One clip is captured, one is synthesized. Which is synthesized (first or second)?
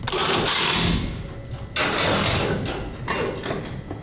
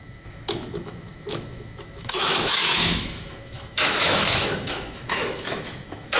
second